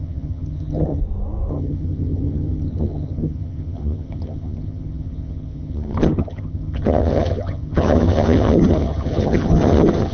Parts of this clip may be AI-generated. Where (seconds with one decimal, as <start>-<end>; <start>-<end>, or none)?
0.0-1.0; 1.5-10.1